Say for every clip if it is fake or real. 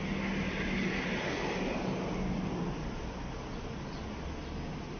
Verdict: real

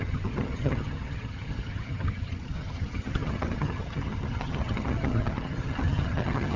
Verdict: fake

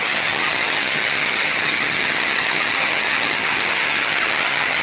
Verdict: fake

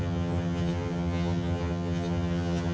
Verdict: fake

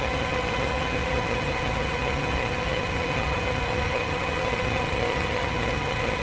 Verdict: fake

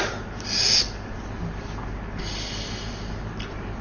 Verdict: real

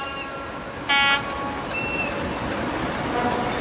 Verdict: real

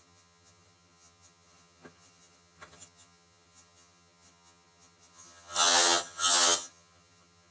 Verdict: fake